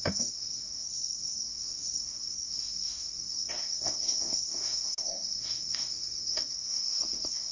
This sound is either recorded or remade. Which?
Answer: remade